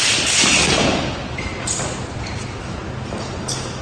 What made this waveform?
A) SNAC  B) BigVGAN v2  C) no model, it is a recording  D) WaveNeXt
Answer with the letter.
C